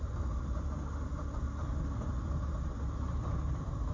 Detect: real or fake real